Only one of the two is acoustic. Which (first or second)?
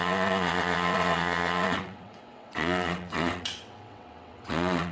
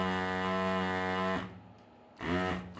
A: second